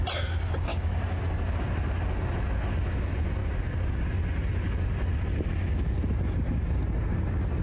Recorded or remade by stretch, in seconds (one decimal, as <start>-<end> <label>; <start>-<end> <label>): 0.0-0.7 recorded; 0.7-1.2 remade; 1.2-7.6 recorded